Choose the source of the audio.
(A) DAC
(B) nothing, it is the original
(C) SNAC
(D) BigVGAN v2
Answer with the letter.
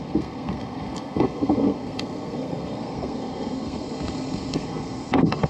C